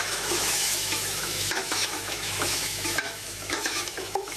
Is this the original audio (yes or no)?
no